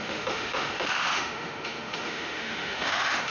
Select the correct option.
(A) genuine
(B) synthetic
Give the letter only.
B